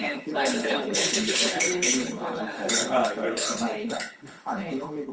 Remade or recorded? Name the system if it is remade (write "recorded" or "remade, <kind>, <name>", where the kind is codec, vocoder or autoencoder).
remade, codec, HILCodec